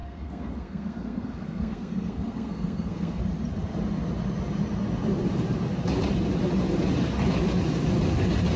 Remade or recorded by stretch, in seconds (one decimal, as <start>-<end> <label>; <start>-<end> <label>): 0.0-3.2 remade; 3.2-8.6 recorded